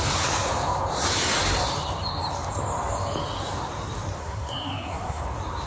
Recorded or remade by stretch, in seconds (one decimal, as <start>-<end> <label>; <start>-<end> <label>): 0.0-4.2 recorded; 4.2-5.2 remade; 5.2-5.7 recorded